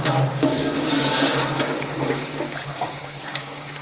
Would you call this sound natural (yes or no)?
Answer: no